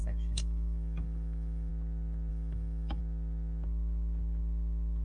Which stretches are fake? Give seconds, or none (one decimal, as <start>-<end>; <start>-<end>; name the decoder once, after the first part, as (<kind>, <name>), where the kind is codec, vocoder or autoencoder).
0.0-1.7 (autoencoder, DAC-VAE); 2.3-3.0